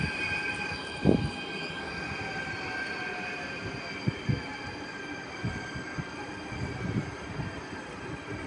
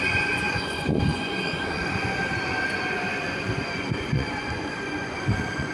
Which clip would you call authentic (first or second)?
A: first